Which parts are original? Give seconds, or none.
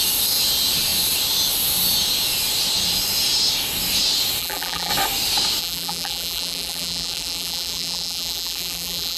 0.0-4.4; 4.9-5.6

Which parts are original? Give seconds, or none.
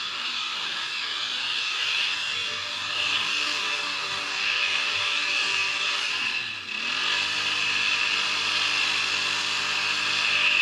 6.1-10.6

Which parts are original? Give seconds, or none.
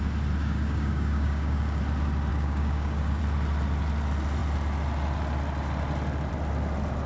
0.0-0.4; 1.8-2.3; 3.2-7.1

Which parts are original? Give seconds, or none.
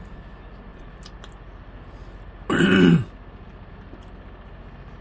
0.0-5.0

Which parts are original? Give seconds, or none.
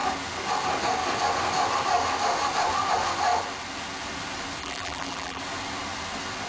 0.0-4.6; 5.4-6.5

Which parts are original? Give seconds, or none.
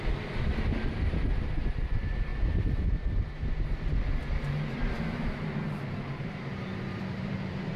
2.3-6.1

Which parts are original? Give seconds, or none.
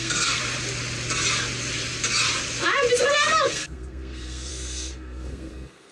0.4-3.5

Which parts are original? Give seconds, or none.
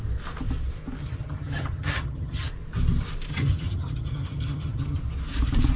0.0-1.0; 2.5-3.3; 5.0-5.8